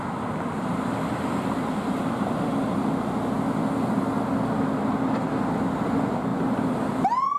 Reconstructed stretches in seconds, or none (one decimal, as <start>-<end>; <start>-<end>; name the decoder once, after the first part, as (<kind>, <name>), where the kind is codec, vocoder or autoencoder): 6.3-7.0 (vocoder, BigVGAN v2)